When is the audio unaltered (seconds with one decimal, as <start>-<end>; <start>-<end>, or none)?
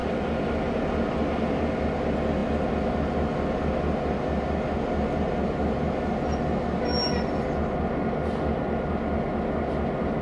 0.0-10.2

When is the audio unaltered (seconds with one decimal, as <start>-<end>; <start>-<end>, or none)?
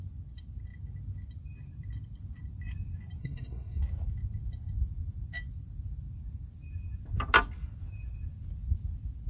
0.0-3.2; 3.8-9.3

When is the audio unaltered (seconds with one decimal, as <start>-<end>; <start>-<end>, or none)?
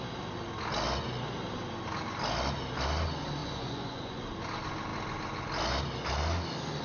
0.0-3.4; 4.2-6.8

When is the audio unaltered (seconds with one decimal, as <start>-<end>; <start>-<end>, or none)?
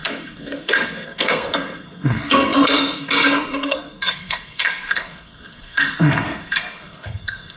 none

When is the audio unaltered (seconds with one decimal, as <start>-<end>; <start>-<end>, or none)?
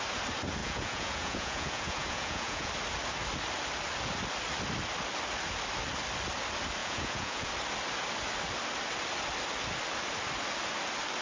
0.0-0.6; 2.7-6.8; 7.5-11.2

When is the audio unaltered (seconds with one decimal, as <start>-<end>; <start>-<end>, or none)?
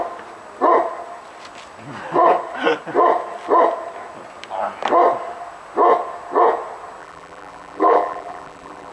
0.0-7.0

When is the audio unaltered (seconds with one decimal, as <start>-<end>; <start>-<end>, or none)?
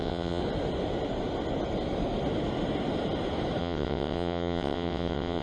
0.4-3.6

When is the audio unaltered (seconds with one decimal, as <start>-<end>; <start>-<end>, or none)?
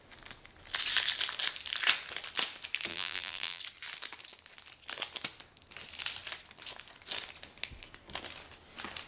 0.0-2.9; 3.6-9.1